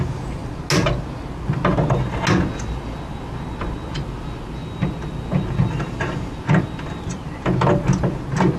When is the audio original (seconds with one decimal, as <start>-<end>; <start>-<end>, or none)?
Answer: 0.0-8.6